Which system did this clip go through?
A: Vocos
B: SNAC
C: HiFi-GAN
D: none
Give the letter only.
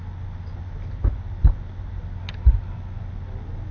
D